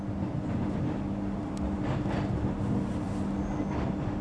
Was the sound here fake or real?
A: real